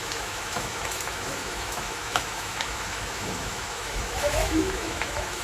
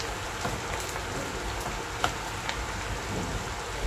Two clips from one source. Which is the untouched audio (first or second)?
second